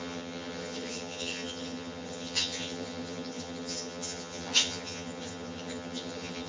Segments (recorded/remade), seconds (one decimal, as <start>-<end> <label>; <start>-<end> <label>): 0.0-6.5 remade